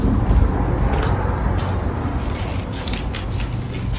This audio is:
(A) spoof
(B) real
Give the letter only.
B